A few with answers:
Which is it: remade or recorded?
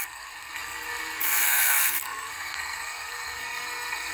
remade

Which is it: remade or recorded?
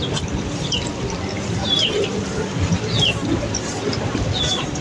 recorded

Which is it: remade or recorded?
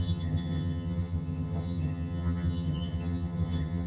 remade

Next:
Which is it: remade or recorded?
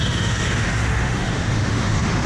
remade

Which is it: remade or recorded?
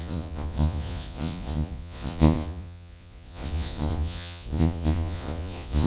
remade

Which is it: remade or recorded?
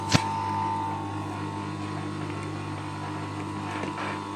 recorded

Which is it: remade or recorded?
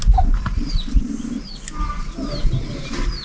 recorded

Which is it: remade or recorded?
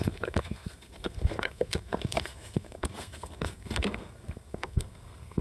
remade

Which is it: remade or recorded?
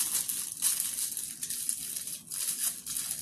recorded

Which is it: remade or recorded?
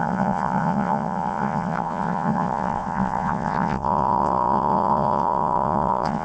remade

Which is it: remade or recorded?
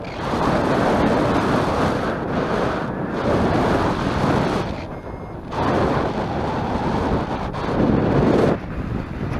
recorded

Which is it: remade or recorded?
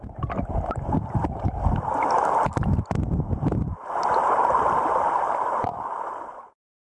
recorded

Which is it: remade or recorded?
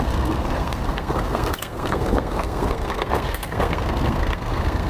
remade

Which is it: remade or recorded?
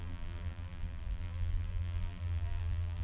remade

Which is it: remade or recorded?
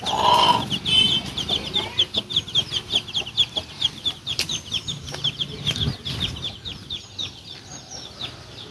recorded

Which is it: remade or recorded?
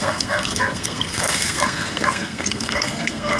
remade